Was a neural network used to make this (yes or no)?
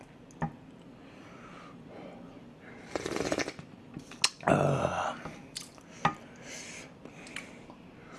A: no